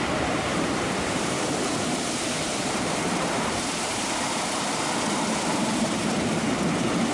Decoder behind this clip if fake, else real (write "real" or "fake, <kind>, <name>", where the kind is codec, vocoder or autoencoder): fake, vocoder, BigVGAN v2